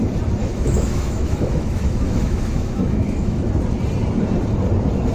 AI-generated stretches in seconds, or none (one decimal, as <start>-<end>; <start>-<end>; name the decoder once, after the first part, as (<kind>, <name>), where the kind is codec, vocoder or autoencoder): 0.4-3.5 (autoencoder, DAC-VAE)